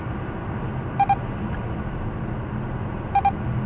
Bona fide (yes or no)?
yes